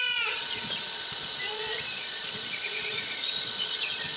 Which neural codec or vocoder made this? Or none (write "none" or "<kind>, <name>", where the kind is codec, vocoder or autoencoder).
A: vocoder, Vocos